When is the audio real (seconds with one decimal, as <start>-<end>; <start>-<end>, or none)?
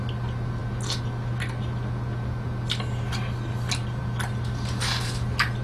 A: 0.0-5.6